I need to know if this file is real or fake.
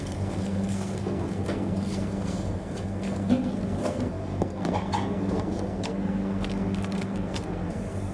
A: fake